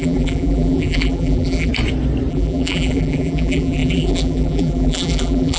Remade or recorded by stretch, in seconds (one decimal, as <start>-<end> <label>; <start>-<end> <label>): 0.0-1.7 remade; 1.7-2.3 recorded; 2.3-5.6 remade

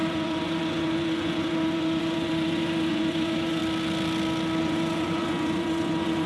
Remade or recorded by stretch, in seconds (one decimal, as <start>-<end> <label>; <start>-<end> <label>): 0.0-3.6 remade; 3.6-4.6 recorded; 4.6-6.3 remade

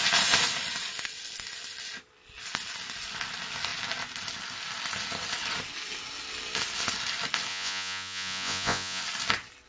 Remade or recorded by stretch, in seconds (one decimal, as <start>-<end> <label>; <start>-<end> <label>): 0.0-7.5 recorded; 7.5-9.0 remade; 9.0-9.7 recorded